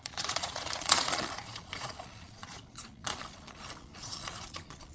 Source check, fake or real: fake